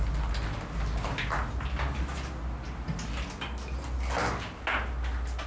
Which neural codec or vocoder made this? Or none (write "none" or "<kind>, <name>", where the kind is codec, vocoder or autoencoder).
none